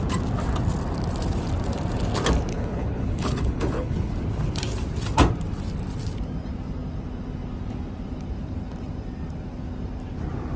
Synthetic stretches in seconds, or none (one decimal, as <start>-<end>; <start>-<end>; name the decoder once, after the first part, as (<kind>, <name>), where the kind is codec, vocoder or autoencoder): 2.5-4.1 (codec, HILCodec)

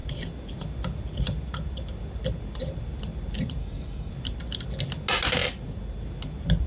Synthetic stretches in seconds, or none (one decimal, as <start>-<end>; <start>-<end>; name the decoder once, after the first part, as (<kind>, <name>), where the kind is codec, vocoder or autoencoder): 3.6-4.1 (codec, DAC)

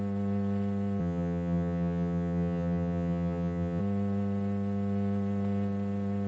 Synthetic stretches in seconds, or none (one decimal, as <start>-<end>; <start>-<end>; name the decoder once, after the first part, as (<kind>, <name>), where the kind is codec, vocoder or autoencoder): 1.0-3.8 (vocoder, HiFi-GAN)